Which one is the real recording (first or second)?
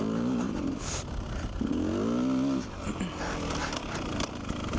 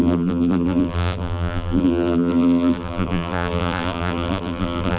first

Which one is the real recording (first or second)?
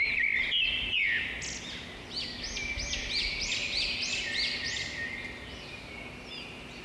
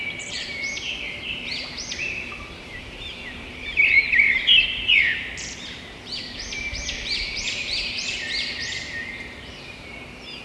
first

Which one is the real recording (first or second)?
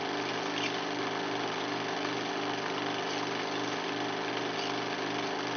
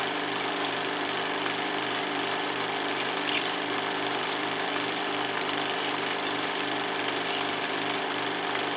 first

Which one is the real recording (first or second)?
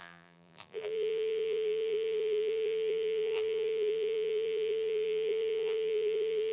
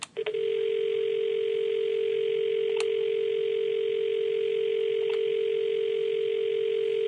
second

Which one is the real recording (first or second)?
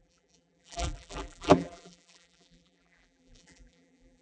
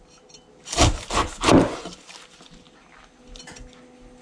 second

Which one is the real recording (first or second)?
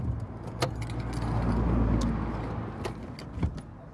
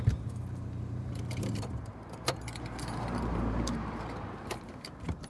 first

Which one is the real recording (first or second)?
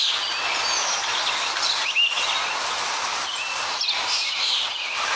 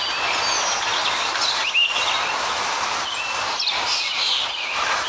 second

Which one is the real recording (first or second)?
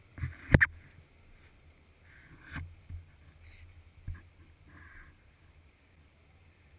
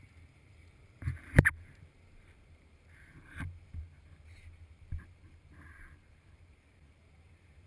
first